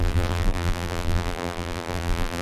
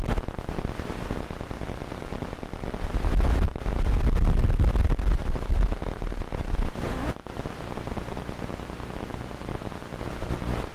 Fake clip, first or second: first